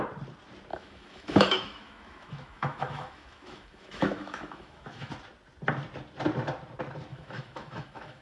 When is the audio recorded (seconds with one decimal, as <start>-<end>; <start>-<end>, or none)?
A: 0.0-0.7; 5.1-7.1